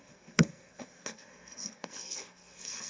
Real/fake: fake